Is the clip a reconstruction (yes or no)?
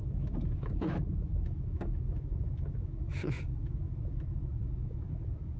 yes